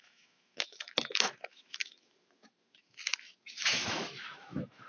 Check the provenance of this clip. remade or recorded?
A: remade